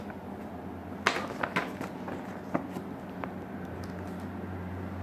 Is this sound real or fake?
real